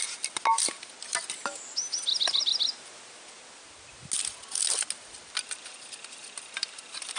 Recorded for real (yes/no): yes